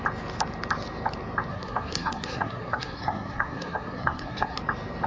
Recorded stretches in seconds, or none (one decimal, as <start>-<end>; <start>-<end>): 0.0-1.5; 4.6-5.1